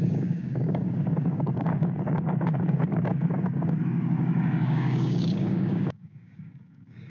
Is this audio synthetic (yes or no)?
yes